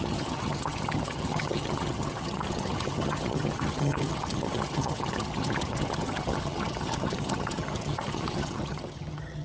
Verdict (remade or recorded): remade